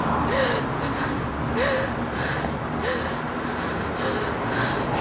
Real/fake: real